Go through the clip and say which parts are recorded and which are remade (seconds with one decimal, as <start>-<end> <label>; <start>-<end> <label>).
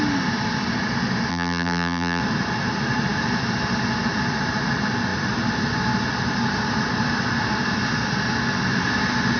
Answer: 0.0-1.3 recorded; 1.3-2.2 remade; 2.2-9.4 recorded